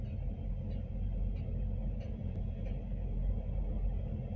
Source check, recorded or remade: recorded